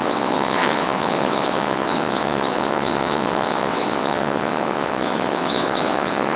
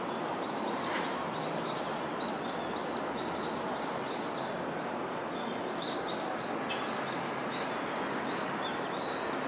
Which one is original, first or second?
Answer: second